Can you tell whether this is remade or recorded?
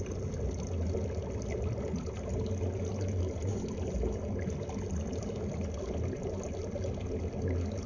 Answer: recorded